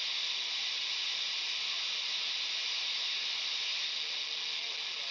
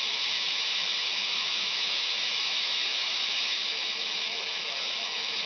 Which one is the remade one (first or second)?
second